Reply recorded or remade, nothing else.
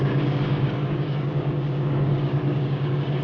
remade